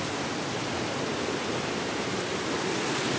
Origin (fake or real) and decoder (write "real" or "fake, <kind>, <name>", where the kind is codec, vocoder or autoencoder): real